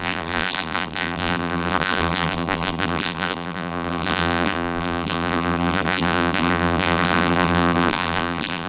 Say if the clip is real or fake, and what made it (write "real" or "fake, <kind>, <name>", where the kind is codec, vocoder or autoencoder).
fake, vocoder, BigVGAN v2